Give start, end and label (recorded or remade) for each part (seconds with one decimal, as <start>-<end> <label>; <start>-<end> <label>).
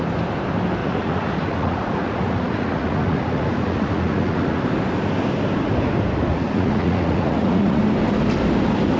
0.0-0.8 recorded; 0.8-4.6 remade; 4.6-6.3 recorded; 6.3-7.8 remade; 7.8-9.0 recorded